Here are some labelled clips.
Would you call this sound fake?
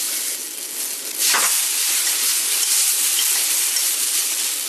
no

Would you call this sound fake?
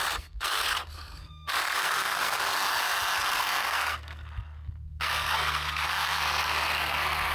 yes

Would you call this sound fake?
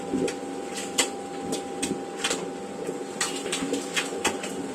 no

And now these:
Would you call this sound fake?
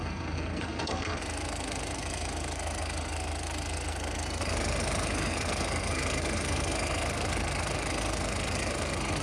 yes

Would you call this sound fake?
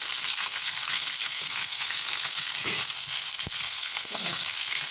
yes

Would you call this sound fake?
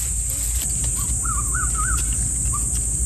no